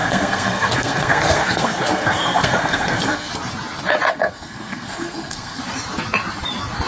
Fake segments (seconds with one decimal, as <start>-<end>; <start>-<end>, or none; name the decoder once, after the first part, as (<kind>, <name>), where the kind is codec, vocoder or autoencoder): 0.0-3.3 (codec, SNAC); 4.1-5.6